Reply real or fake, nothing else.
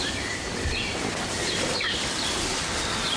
real